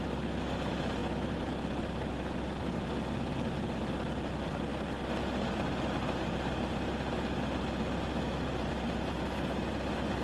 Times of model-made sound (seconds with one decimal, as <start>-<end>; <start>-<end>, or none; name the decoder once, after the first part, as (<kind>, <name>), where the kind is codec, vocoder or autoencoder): none